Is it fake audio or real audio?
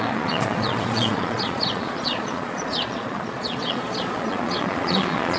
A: fake